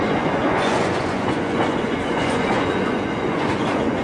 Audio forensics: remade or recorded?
remade